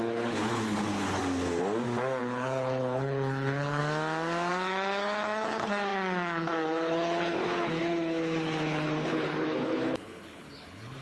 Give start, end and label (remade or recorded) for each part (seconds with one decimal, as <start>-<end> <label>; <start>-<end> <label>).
0.0-1.2 remade; 1.2-2.2 recorded; 2.2-3.8 remade; 3.8-4.5 recorded; 4.5-11.0 remade